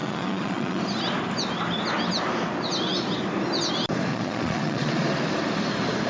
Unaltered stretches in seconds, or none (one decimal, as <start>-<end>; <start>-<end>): 0.8-4.1; 4.9-6.1